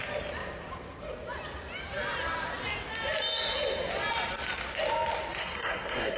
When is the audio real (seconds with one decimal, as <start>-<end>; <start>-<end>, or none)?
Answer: 0.0-5.4